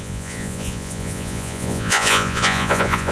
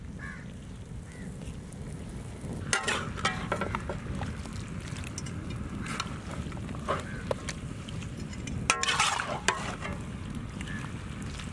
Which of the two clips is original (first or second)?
second